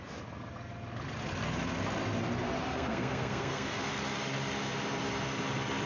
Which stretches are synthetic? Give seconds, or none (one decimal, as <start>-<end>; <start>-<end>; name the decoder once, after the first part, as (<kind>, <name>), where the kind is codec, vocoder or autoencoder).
2.7-3.9 (codec, SNAC)